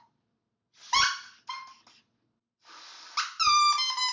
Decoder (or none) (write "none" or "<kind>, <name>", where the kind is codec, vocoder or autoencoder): none